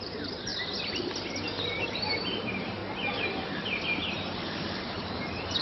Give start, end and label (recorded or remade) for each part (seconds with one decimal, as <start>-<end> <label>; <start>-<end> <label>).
0.0-0.5 remade; 0.5-1.8 recorded; 1.8-2.8 remade; 2.8-4.1 recorded; 4.1-5.6 remade